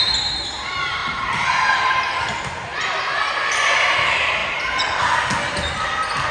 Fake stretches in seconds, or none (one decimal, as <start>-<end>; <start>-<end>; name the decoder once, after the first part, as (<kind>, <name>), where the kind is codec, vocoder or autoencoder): 1.0-2.2 (vocoder, BigVGAN v2); 2.7-3.3; 4.4-5.0

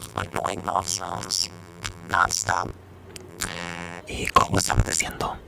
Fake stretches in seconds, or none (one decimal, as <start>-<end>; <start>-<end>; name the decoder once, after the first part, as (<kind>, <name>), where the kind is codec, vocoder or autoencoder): 0.0-2.7 (vocoder, BigVGAN v2); 3.3-4.0; 4.4-5.0

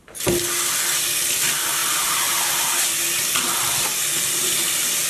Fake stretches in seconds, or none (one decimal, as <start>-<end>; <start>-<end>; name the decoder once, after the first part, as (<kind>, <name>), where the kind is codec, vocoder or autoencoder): 1.8-2.5 (vocoder, BigVGAN v2)

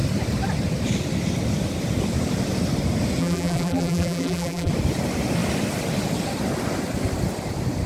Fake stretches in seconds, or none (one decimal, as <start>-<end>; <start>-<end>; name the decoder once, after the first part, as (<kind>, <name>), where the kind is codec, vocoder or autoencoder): 3.2-4.7 (vocoder, BigVGAN v2)

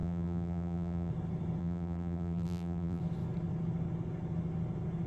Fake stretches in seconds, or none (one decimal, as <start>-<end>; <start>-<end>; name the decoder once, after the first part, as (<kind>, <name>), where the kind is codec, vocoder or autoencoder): 0.0-1.1 (vocoder, BigVGAN v2); 1.6-3.0

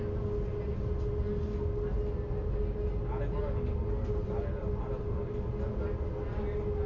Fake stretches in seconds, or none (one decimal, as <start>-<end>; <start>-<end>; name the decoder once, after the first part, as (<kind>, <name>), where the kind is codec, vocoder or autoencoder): none

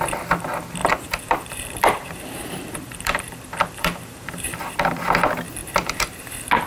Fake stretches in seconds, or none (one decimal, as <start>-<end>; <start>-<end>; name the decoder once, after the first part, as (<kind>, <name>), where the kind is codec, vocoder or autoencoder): 0.8-4.6 (vocoder, BigVGAN v2); 5.6-6.2

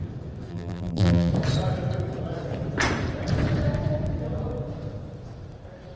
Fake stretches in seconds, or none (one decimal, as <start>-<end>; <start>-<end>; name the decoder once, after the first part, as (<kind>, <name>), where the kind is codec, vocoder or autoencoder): 0.5-1.3 (vocoder, BigVGAN v2)